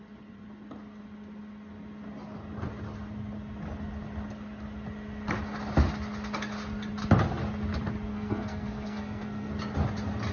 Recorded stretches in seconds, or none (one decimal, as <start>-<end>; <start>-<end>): 0.0-8.1; 9.5-10.3